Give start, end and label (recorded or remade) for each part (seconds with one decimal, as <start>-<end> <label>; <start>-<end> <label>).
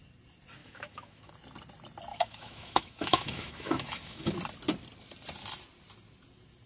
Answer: 0.0-0.6 recorded; 0.6-1.3 remade; 1.3-2.1 recorded; 2.1-4.3 remade; 4.3-6.7 recorded